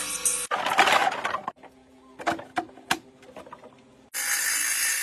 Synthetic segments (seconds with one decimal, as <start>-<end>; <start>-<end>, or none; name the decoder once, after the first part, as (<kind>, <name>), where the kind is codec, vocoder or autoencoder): none